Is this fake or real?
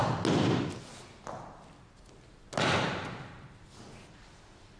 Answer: real